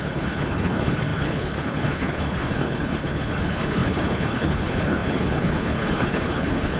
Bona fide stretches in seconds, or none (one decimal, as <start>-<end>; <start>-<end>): none